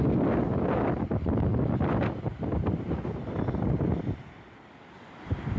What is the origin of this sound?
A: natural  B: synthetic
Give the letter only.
A